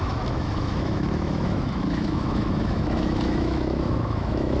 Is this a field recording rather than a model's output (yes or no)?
no